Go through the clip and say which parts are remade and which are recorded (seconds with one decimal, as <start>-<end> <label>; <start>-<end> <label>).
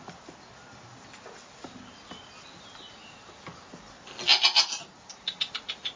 0.0-6.0 recorded